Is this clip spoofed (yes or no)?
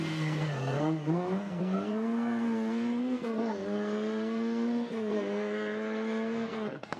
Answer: yes